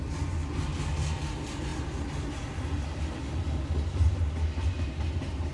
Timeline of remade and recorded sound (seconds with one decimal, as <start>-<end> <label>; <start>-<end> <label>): 0.0-5.5 recorded